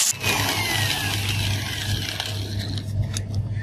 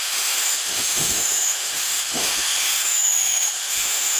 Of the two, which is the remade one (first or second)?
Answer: second